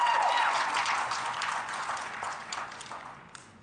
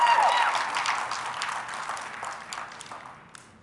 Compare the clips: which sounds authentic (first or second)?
second